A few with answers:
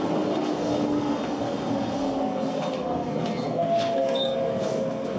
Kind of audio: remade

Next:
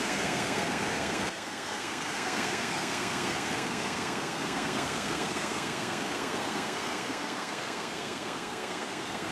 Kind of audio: remade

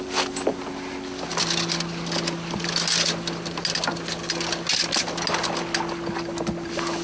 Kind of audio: recorded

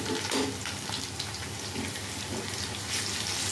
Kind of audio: recorded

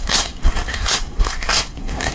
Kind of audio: remade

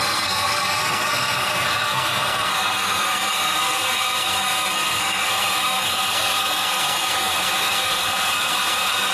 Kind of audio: remade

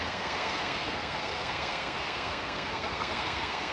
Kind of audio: remade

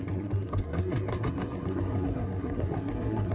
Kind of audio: remade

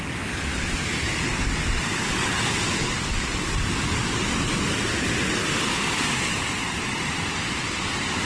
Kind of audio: recorded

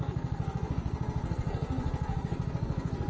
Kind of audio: remade